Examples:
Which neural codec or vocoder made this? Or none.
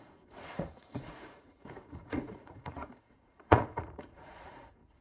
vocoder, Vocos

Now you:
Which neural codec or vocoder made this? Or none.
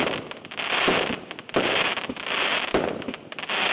none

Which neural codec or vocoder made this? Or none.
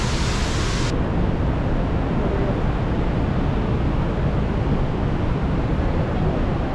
none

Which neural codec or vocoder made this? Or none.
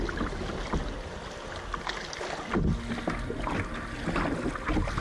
none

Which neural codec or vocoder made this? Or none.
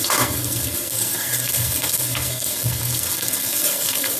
codec, SNAC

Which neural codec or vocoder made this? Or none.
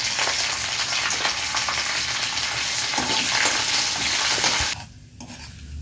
none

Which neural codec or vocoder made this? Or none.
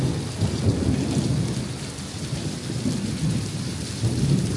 none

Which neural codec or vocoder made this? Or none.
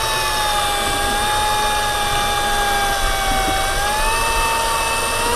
none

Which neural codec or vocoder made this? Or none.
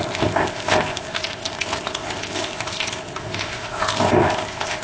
codec, ZipCodec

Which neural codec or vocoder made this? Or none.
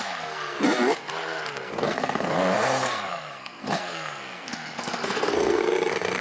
codec, SNAC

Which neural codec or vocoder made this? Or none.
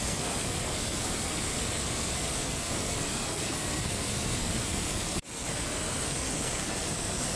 codec, SNAC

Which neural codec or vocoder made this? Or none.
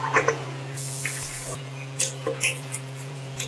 vocoder, Vocos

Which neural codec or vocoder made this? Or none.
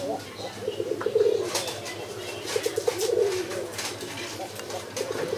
none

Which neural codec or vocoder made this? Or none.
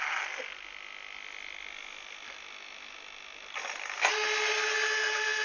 none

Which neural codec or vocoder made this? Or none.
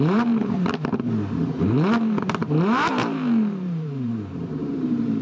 vocoder, BigVGAN v2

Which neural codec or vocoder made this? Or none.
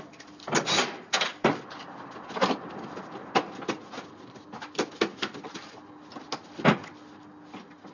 none